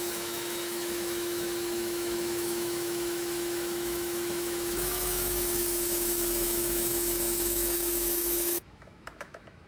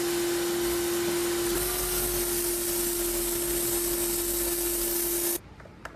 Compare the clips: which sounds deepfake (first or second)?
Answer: first